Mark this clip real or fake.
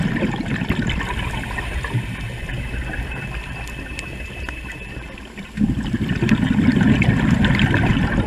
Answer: real